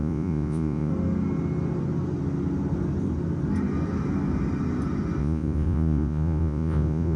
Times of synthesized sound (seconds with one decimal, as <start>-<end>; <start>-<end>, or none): 0.0-0.9; 5.2-7.2